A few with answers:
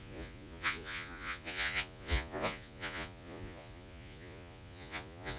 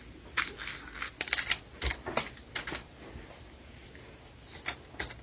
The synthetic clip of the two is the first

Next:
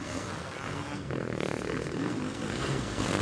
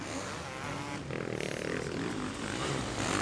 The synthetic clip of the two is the first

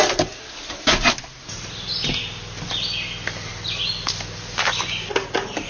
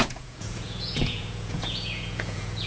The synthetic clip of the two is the second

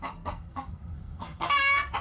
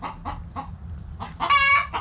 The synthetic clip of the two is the first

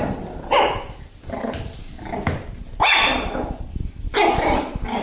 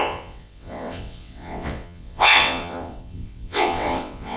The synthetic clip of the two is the second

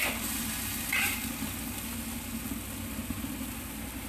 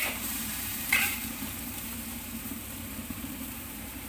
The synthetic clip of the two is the second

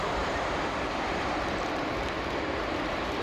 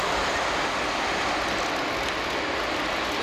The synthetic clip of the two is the first